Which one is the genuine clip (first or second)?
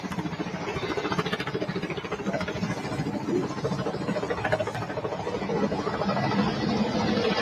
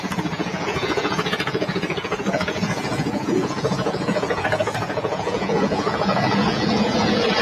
first